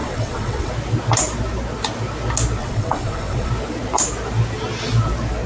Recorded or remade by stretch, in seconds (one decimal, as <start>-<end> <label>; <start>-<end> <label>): 0.0-0.7 remade; 0.7-2.6 recorded; 2.6-3.5 remade; 3.5-5.5 recorded